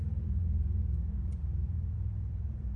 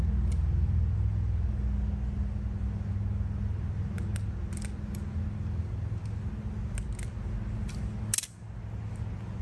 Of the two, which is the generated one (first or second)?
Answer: first